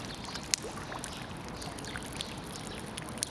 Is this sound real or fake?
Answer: real